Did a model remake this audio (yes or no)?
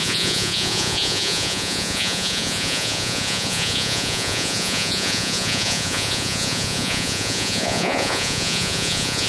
yes